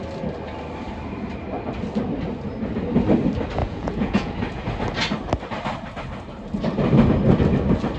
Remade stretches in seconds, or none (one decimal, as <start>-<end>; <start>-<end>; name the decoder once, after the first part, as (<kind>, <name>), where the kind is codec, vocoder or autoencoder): 3.6-4.3 (vocoder, Vocos)